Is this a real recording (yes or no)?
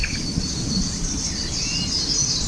no